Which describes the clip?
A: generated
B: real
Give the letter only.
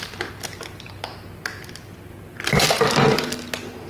B